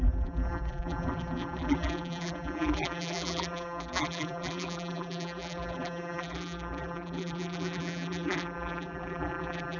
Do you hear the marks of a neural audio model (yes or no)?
yes